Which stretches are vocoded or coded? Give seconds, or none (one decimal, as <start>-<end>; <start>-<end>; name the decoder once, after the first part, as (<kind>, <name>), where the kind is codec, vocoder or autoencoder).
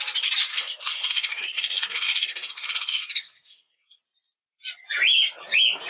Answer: 0.5-4.0 (codec, SNAC)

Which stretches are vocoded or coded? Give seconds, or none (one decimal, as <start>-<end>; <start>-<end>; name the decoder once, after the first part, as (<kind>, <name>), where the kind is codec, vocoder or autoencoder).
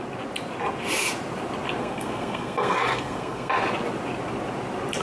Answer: 1.8-3.5 (codec, SNAC)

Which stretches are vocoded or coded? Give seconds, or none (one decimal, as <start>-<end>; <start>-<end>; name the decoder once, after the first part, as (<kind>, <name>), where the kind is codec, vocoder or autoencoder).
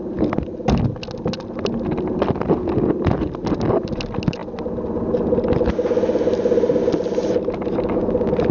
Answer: none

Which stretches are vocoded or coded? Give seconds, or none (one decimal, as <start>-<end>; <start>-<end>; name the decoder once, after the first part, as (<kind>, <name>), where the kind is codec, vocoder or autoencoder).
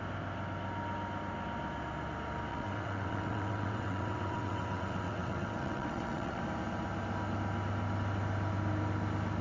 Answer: 2.5-6.4 (vocoder, WaveNeXt)